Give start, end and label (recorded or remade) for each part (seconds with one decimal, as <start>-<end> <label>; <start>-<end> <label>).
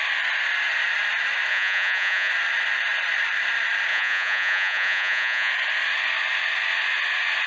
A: 0.0-1.5 recorded; 1.5-2.3 remade; 2.3-3.9 recorded; 3.9-5.5 remade; 5.5-7.5 recorded